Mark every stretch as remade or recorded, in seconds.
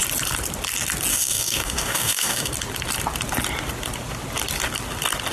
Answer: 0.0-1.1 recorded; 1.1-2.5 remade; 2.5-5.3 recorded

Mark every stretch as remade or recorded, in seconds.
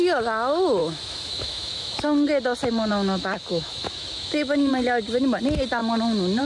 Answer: 0.0-0.8 recorded; 0.8-2.0 remade; 2.0-2.9 recorded; 2.9-4.7 remade; 4.7-6.4 recorded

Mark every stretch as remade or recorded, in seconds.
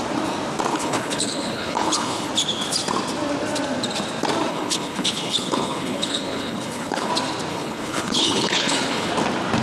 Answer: 0.0-0.7 recorded; 0.7-2.3 remade; 2.3-4.5 recorded; 4.5-7.1 remade; 7.1-7.5 recorded; 7.5-9.1 remade; 9.1-9.6 recorded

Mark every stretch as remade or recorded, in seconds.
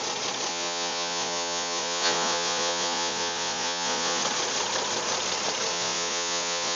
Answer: 0.0-0.5 recorded; 0.5-4.2 remade; 4.2-5.7 recorded; 5.7-6.8 remade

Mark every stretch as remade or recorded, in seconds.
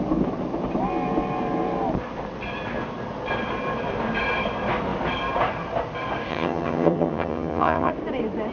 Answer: 0.0-6.3 recorded; 6.3-7.9 remade; 7.9-8.5 recorded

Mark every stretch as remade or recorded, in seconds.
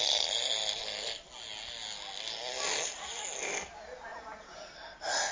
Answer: 0.0-4.1 recorded; 4.1-4.7 remade; 4.7-5.3 recorded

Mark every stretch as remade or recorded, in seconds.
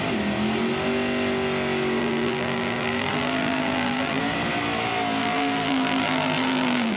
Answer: 0.0-2.0 recorded; 2.0-4.2 remade; 4.2-5.2 recorded; 5.2-7.0 remade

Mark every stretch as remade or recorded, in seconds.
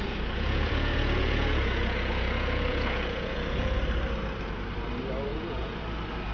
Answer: 0.0-3.8 remade; 3.8-5.3 recorded; 5.3-5.8 remade; 5.8-6.3 recorded